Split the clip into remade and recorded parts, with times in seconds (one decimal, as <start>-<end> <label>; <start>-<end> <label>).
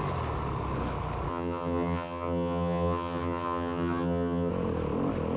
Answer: 0.0-1.3 recorded; 1.3-4.5 remade; 4.5-5.4 recorded